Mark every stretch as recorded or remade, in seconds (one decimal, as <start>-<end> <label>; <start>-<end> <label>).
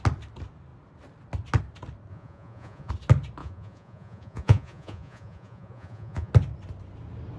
0.0-2.1 recorded; 2.1-2.9 remade; 2.9-3.4 recorded; 3.4-6.3 remade; 6.3-7.4 recorded